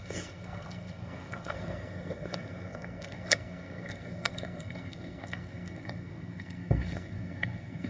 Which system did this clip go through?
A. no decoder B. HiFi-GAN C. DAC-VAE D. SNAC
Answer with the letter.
D